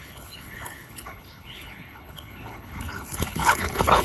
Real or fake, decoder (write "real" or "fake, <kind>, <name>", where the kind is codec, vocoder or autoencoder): fake, codec, HILCodec